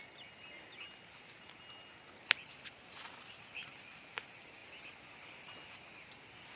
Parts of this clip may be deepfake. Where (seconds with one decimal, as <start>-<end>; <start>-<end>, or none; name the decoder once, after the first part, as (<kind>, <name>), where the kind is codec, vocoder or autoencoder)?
none

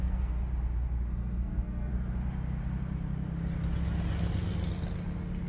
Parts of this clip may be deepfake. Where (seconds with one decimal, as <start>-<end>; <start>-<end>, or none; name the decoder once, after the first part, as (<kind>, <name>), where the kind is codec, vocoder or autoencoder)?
0.0-0.4 (codec, SNAC); 1.1-1.9

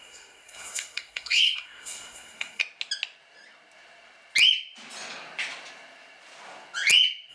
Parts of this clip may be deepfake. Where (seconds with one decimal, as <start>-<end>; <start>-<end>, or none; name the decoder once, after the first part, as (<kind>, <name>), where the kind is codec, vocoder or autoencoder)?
0.0-2.6 (codec, SNAC)

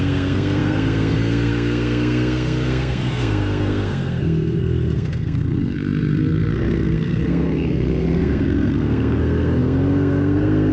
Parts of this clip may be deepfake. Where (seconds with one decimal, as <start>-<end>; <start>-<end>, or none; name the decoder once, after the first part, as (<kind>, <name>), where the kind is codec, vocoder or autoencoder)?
0.0-10.7 (codec, SNAC)

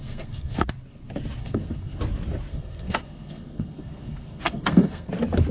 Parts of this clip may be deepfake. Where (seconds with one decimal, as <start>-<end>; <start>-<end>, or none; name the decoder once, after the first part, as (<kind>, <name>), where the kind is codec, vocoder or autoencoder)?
0.0-0.6 (codec, SNAC); 1.4-2.0; 2.5-5.1

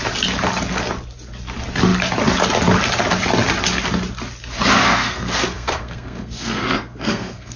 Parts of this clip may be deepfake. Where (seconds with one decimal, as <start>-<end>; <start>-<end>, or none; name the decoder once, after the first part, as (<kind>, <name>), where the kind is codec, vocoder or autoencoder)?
4.8-7.6 (codec, SNAC)